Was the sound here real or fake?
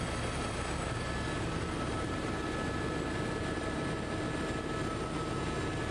real